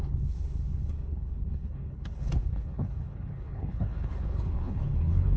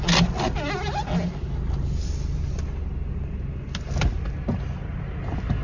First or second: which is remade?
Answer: first